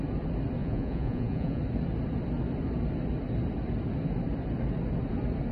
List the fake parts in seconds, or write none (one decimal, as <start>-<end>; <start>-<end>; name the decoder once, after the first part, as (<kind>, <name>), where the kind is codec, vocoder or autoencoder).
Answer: 0.6-1.6 (vocoder, Vocos)

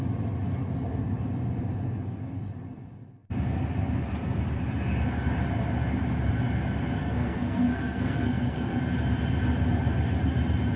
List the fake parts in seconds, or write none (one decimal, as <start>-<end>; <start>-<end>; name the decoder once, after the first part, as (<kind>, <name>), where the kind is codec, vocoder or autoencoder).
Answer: 7.0-8.8 (codec, SNAC)